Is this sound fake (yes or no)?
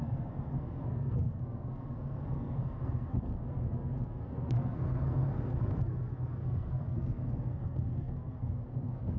yes